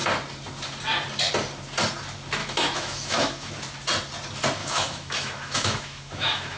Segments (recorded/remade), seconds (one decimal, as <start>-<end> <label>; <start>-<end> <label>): 0.0-2.4 recorded; 2.4-3.5 remade; 3.5-4.6 recorded; 4.6-6.6 remade